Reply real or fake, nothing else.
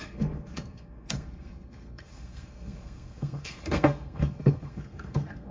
fake